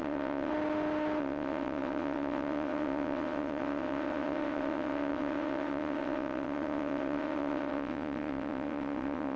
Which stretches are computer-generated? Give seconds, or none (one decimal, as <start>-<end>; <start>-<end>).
0.0-0.5; 1.2-9.4